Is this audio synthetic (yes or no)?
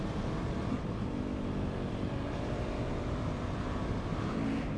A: yes